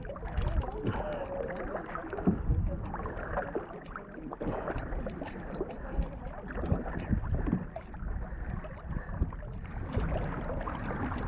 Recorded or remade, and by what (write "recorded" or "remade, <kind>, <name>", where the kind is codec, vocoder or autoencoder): recorded